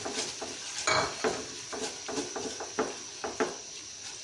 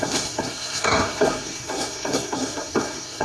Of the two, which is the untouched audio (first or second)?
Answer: first